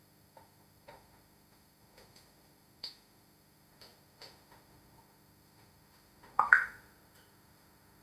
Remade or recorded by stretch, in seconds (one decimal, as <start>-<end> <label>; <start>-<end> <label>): 0.0-8.0 remade